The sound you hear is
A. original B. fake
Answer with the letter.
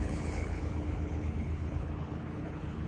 B